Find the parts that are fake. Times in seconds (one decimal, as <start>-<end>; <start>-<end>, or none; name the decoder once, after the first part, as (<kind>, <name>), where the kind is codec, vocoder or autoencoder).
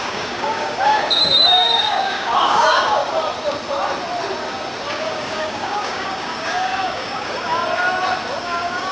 0.0-3.0 (codec, DAC); 4.9-7.6; 8.4-8.9